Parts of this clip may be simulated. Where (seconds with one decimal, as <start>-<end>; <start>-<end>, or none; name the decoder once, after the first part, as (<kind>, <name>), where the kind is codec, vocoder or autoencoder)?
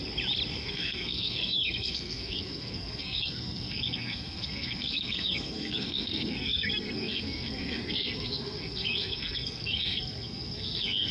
0.6-11.1 (codec, SNAC)